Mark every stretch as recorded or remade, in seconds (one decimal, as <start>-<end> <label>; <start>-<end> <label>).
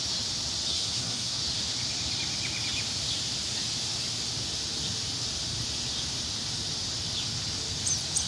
0.0-0.7 recorded; 0.7-1.4 remade; 1.4-8.3 recorded